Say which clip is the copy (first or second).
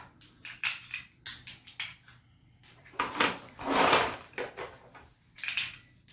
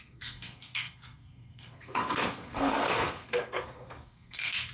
second